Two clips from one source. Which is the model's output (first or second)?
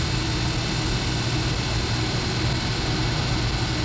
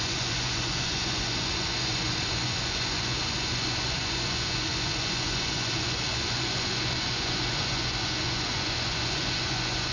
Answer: second